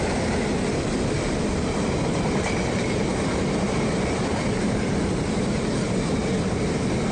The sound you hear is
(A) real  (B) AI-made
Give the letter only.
A